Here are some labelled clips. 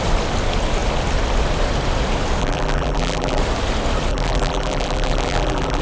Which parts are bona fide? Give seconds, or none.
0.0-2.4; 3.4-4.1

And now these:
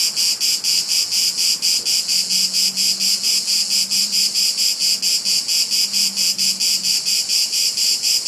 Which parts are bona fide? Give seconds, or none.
0.0-4.0; 4.8-6.9

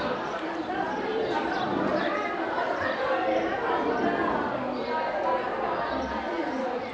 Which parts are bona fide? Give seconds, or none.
1.9-6.0

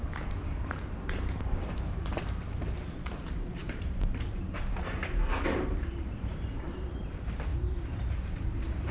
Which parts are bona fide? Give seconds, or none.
7.5-8.2

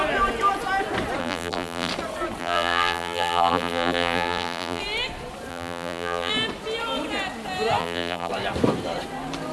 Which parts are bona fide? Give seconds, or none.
0.0-1.2; 1.9-2.4; 4.8-5.5; 6.3-7.8; 8.3-9.5

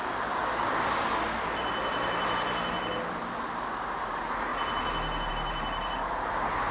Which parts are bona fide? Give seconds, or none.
0.4-4.1; 4.5-5.3

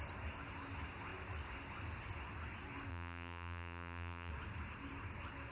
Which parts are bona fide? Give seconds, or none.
0.0-2.9; 4.3-5.5